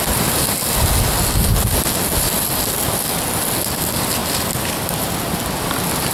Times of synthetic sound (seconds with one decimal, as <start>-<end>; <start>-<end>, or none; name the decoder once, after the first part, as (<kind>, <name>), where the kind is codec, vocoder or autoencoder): none